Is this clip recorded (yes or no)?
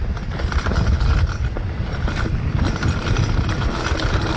yes